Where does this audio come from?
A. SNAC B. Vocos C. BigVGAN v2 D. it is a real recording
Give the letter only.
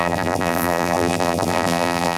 C